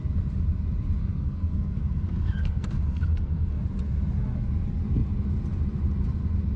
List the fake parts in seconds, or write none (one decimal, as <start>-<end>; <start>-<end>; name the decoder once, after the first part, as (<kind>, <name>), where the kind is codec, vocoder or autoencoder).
1.0-3.6 (codec, SNAC)